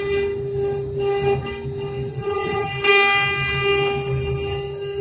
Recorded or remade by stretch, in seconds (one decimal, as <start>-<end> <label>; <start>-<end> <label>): 0.0-2.1 recorded; 2.1-2.7 remade; 2.7-5.0 recorded